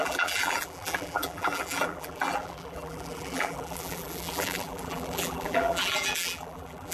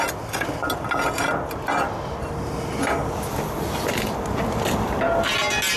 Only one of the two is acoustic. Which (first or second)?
second